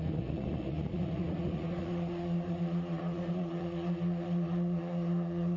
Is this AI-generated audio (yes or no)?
yes